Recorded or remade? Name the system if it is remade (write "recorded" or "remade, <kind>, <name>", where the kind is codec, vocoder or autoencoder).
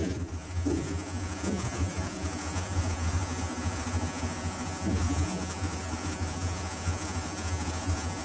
remade, vocoder, Vocos